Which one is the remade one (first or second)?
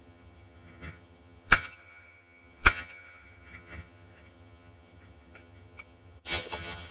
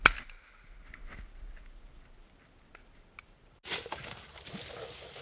first